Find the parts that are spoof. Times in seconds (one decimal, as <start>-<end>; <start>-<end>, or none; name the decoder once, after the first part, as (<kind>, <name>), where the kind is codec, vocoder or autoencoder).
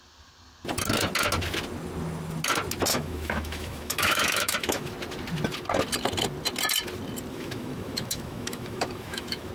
2.9-4.9 (autoencoder, DAC-VAE); 7.3-9.5